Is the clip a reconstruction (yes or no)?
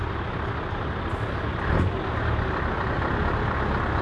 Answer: no